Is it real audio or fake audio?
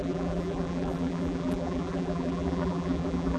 fake